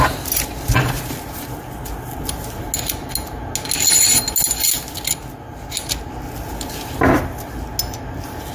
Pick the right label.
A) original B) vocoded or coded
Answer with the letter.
A